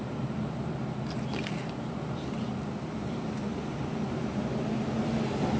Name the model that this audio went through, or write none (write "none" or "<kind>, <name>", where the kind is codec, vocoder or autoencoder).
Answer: none